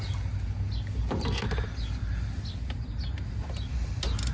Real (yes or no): yes